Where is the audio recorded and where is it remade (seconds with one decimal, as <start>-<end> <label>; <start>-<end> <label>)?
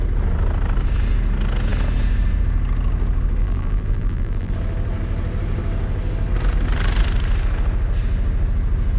0.0-3.4 recorded; 3.4-4.5 remade; 4.5-9.0 recorded